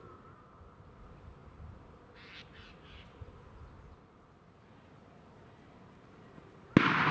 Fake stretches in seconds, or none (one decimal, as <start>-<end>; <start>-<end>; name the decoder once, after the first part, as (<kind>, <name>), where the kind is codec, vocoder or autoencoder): none